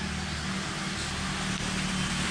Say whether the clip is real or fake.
real